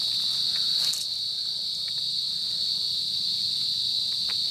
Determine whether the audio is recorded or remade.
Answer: recorded